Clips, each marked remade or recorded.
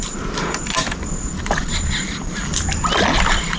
recorded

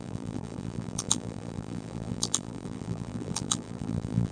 remade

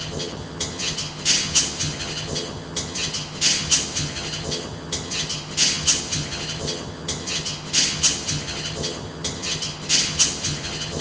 remade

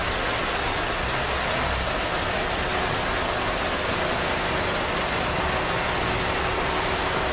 recorded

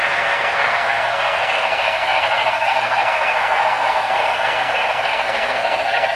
remade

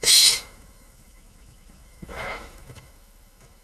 remade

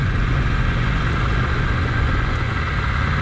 remade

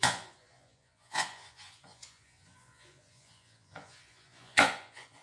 remade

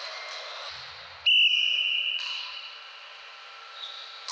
recorded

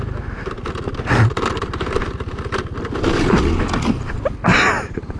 recorded